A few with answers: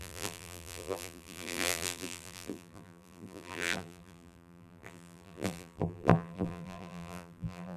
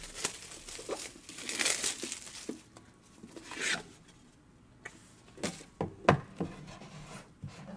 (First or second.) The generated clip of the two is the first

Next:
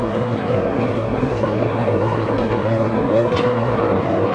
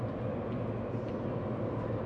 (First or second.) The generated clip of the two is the first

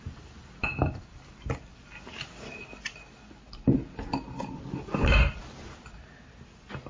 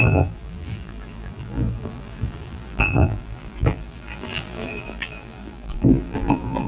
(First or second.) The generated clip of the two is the second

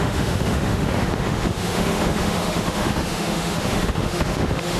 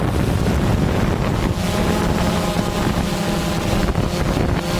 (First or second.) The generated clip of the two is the first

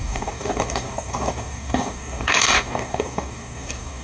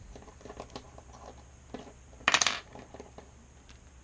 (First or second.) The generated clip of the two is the first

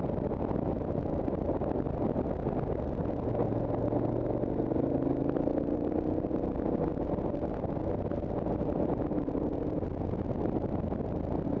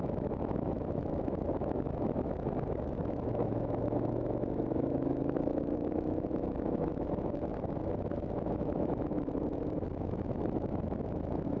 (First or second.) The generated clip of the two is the second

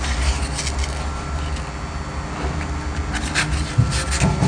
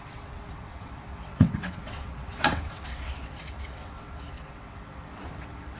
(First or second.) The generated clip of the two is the second